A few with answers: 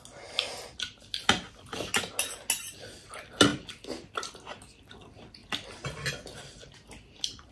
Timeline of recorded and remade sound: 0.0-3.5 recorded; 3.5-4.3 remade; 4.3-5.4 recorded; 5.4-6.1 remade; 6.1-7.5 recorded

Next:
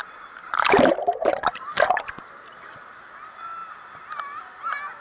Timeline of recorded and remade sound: 0.0-3.0 remade; 3.0-5.0 recorded

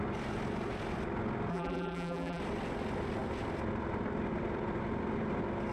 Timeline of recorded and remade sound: 0.0-1.5 recorded; 1.5-2.4 remade; 2.4-5.7 recorded

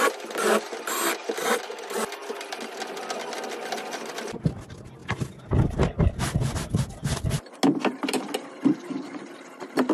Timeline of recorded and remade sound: 0.0-9.9 recorded

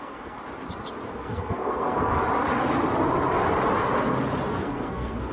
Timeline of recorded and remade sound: 0.0-0.4 remade; 0.4-1.1 recorded; 1.1-2.2 remade; 2.2-4.5 recorded; 4.5-5.3 remade

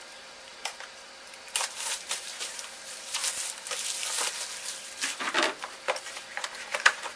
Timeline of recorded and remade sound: 0.0-3.2 remade; 3.2-6.3 recorded; 6.3-7.2 remade